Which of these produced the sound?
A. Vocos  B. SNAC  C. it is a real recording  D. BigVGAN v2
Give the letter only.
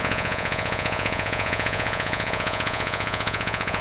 A